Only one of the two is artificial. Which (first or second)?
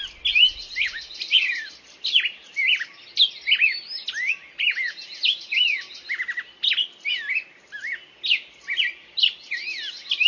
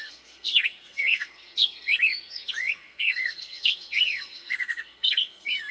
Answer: second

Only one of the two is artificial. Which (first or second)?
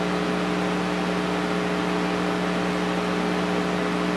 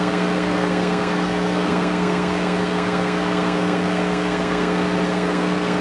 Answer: second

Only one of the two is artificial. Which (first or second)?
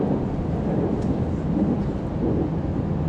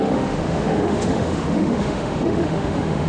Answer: second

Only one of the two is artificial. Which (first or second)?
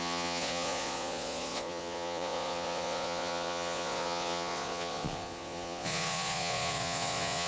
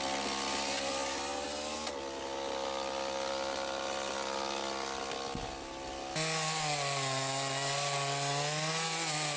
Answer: first